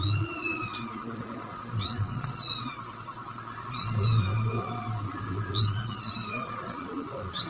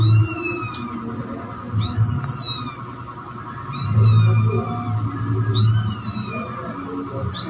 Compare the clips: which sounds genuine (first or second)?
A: second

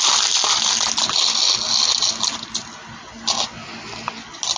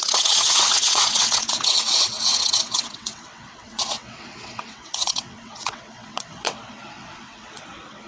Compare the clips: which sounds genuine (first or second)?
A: first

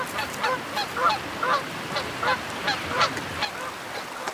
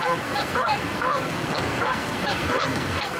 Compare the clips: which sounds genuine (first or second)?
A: first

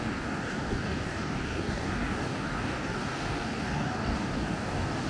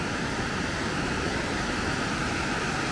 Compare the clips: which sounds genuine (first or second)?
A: second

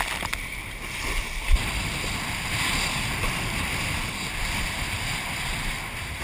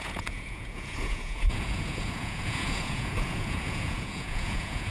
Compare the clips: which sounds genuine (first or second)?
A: first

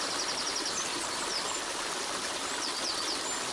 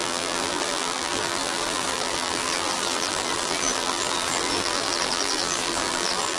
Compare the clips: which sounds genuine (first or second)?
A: first